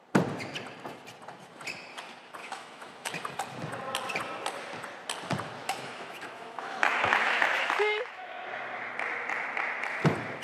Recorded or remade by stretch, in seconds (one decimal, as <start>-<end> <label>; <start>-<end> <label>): 0.0-2.4 recorded; 2.4-3.1 remade; 3.1-5.6 recorded; 5.6-8.4 remade; 8.4-10.4 recorded